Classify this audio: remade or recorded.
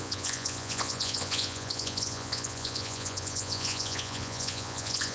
remade